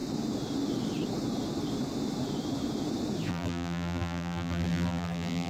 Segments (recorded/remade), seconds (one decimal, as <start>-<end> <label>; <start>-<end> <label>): 0.0-3.3 recorded; 3.3-5.5 remade